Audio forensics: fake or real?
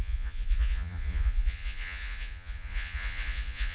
fake